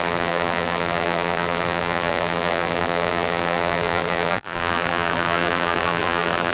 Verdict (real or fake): fake